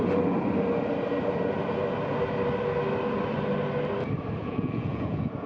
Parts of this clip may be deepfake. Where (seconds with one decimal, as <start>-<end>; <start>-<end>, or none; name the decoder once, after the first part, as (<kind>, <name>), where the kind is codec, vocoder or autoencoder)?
4.4-5.5 (vocoder, Vocos)